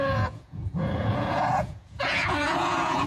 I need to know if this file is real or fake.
fake